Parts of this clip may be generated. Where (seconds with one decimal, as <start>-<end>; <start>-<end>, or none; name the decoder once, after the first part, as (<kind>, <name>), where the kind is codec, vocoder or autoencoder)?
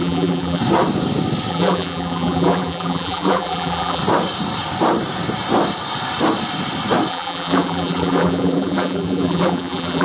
0.0-0.6 (vocoder, BigVGAN v2); 1.5-4.0; 7.1-10.0